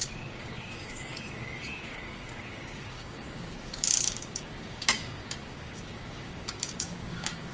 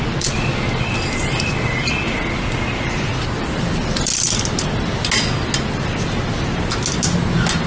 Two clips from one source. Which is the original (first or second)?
second